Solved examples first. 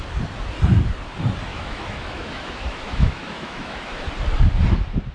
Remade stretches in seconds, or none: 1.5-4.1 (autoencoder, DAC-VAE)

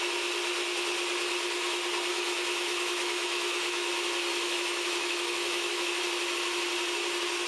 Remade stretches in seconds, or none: 2.1-3.9 (autoencoder, DAC-VAE); 4.3-6.0

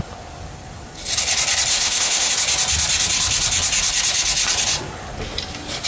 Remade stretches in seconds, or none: 1.7-2.3 (autoencoder, DAC-VAE)

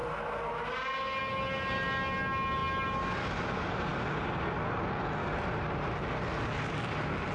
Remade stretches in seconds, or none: none

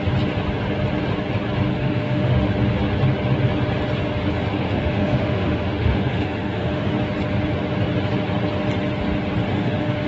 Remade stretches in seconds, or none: 1.7-2.5 (autoencoder, DAC-VAE); 4.5-6.9; 9.5-10.1

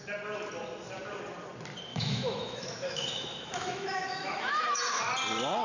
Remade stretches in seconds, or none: 1.9-5.0 (autoencoder, DAC-VAE)

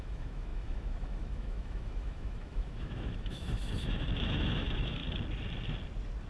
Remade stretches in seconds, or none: 0.0-5.0 (autoencoder, DAC-VAE)

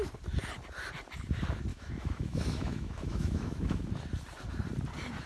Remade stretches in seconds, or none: 1.7-3.9 (autoencoder, DAC-VAE)